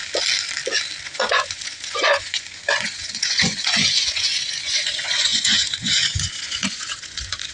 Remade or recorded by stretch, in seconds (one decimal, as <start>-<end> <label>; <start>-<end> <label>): 0.0-1.0 recorded; 1.0-7.5 remade